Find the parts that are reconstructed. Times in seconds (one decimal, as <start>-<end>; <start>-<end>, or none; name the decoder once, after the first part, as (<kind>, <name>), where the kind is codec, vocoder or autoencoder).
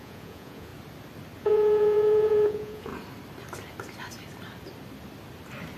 0.0-0.7 (vocoder, Vocos); 1.4-2.9